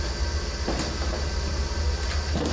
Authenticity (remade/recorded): recorded